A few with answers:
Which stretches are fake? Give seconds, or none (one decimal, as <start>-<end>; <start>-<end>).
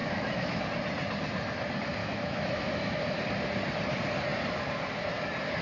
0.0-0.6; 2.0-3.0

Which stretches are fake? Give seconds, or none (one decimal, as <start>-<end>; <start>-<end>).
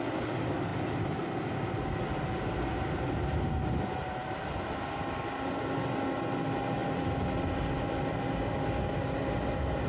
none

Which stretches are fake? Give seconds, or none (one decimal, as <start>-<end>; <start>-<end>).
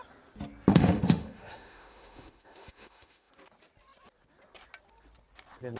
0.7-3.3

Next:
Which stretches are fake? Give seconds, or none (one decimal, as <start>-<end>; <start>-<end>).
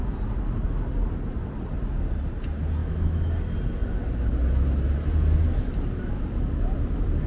2.8-3.3